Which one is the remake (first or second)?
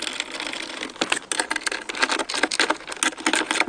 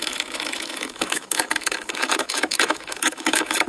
second